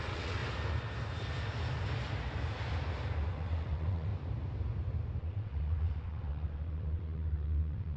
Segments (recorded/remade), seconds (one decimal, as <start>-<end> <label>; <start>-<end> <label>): 0.0-0.4 remade; 0.4-3.3 recorded; 3.3-4.1 remade; 4.1-5.2 recorded; 5.2-8.0 remade